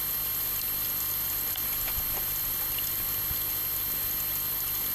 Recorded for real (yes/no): yes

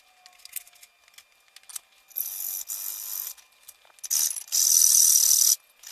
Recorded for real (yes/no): yes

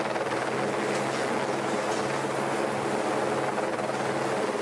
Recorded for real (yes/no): yes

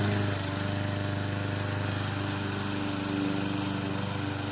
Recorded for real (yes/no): yes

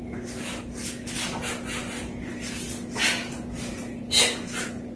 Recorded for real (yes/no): yes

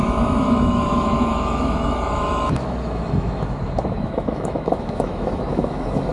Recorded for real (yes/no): no